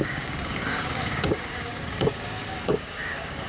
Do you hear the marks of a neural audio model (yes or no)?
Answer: yes